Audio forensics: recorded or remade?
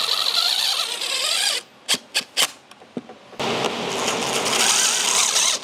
recorded